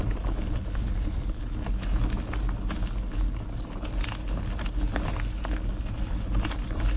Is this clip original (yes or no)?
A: yes